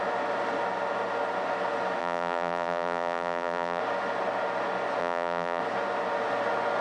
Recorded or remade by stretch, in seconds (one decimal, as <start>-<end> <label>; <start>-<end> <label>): 0.0-2.0 recorded; 2.0-3.8 remade; 3.8-5.0 recorded; 5.0-5.6 remade; 5.6-6.8 recorded